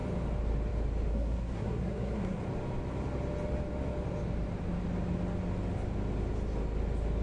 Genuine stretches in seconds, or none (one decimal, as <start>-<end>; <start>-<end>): 0.0-1.1; 2.4-7.2